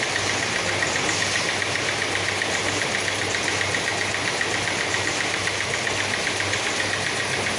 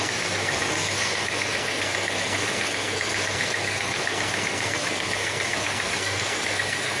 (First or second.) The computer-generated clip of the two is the second